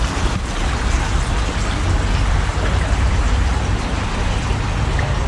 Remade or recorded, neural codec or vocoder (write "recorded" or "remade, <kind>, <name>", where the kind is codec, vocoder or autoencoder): recorded